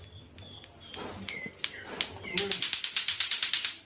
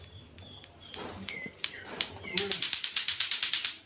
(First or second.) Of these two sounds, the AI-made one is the second